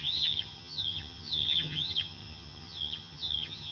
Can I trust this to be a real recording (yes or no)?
no